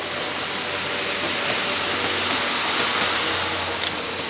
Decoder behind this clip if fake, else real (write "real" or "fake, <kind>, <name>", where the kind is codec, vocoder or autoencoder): real